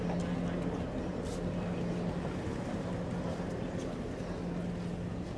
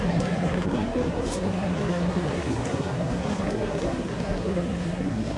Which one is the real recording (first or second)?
first